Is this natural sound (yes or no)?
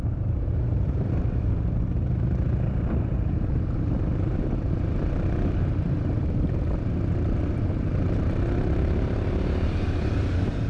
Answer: no